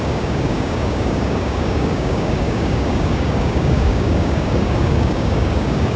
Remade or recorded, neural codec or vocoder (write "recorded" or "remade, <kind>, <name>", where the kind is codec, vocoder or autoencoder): remade, codec, DAC